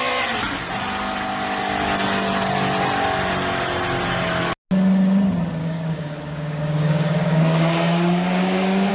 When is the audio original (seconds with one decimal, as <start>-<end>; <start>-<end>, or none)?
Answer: 0.0-5.6